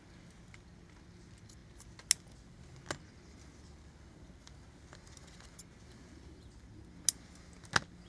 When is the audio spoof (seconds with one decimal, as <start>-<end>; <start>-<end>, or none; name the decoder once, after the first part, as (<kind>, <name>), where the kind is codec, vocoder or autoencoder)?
none